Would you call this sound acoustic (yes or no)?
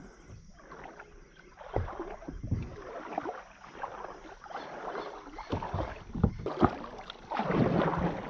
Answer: yes